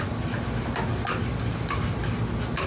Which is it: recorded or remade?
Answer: recorded